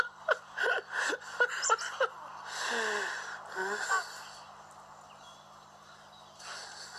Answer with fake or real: real